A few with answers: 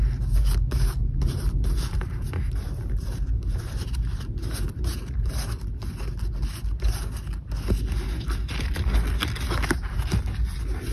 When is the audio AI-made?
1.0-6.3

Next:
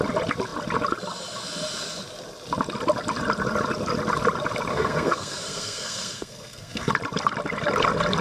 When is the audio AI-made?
4.7-6.9

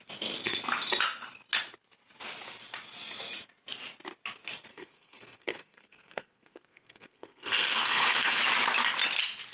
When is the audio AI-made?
4.7-8.4

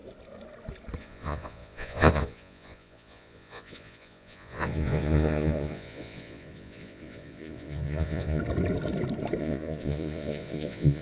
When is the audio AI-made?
1.0-8.4; 9.4-11.0

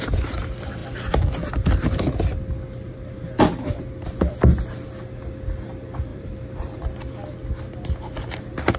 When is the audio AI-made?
6.1-6.8